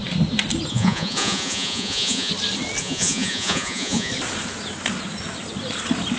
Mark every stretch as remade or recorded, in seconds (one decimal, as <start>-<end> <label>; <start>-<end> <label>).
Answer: 0.0-0.7 recorded; 0.7-2.3 remade; 2.3-2.8 recorded; 2.8-4.1 remade; 4.1-6.2 recorded